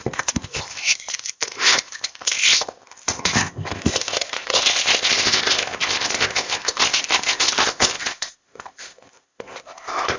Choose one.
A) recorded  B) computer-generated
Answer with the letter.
B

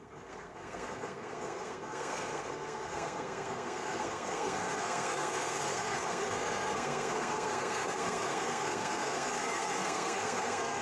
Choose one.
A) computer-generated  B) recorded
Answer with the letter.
A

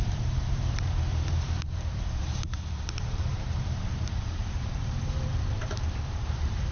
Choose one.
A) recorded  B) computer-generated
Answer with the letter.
B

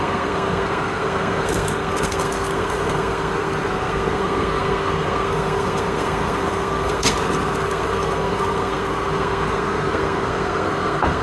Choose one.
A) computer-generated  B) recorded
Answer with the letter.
A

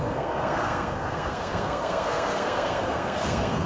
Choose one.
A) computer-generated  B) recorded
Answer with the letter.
A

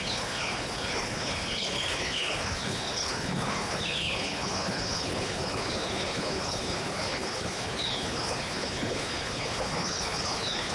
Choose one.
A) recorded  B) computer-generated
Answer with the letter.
B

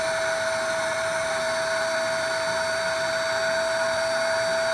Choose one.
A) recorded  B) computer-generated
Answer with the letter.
A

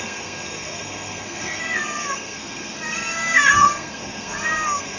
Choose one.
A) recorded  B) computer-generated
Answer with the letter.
B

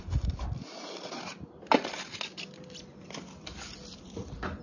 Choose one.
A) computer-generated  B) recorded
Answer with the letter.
B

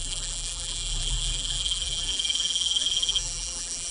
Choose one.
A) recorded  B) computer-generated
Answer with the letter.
B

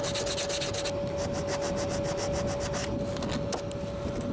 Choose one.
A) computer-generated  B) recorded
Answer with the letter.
B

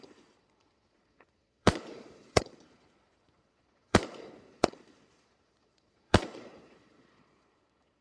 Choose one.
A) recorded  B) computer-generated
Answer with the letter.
B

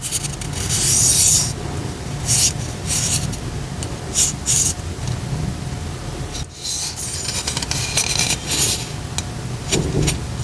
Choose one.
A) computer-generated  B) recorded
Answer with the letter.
B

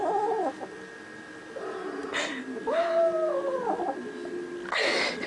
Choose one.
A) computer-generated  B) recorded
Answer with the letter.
B